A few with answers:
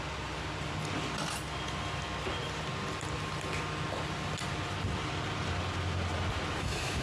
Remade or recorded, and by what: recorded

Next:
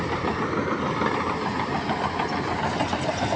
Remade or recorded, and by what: recorded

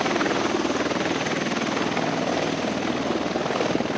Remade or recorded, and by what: recorded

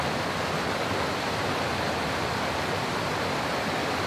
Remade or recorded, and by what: recorded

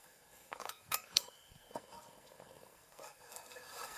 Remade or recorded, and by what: remade, codec, SNAC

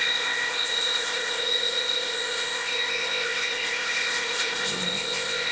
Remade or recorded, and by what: remade, codec, ZipCodec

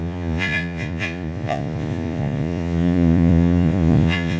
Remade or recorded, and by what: remade, vocoder, Vocos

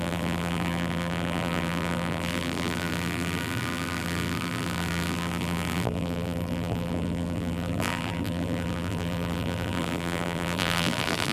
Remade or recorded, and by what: remade, vocoder, BigVGAN v2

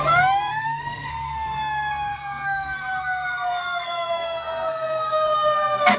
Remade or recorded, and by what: remade, codec, SNAC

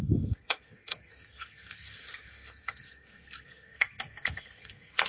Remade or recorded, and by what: remade, codec, SNAC